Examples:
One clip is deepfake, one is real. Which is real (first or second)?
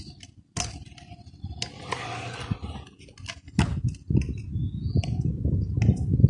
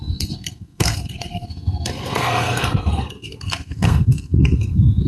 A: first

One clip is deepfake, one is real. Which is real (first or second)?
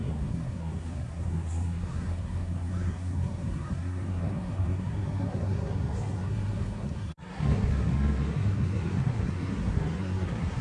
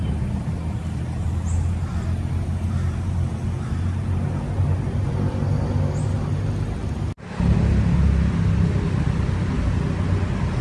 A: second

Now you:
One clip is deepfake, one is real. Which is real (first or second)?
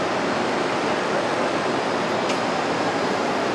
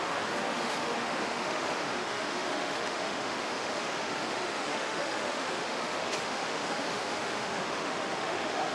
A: first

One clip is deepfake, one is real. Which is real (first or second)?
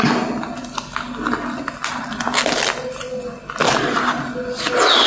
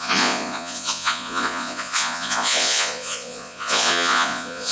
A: first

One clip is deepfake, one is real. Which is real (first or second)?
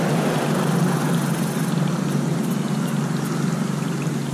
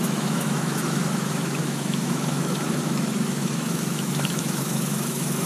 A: first